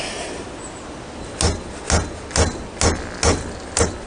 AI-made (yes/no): no